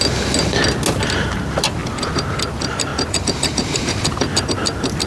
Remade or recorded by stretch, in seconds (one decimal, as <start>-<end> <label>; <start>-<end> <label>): 0.0-5.1 recorded